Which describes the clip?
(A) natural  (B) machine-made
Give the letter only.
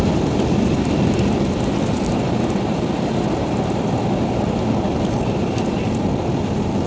A